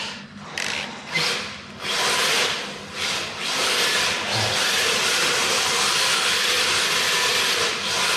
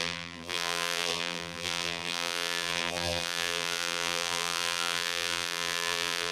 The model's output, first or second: second